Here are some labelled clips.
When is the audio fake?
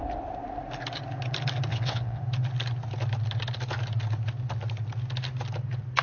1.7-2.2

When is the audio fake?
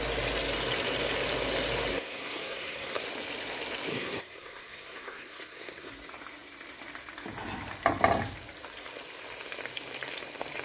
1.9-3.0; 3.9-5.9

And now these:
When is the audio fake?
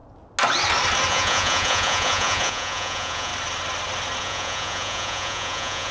1.1-3.3; 4.2-5.9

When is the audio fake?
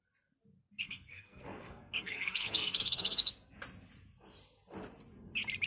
0.8-3.3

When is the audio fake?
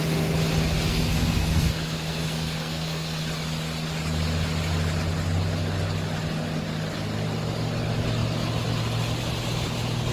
0.9-3.2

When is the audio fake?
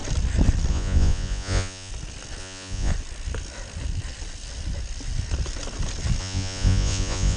0.7-1.9; 2.4-2.9; 6.2-7.4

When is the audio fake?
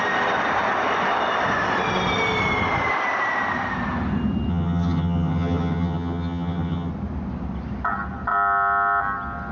4.5-6.9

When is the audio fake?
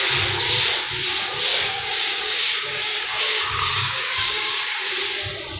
1.5-4.9